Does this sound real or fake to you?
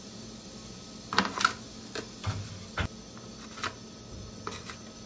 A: real